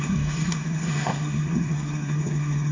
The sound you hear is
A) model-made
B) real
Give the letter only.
A